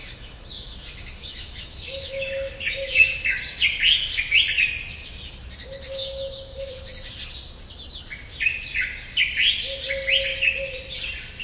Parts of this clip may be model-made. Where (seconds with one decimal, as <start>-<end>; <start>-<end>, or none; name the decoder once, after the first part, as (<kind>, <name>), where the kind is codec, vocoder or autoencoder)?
0.0-3.4 (autoencoder, DAC-VAE); 6.0-6.7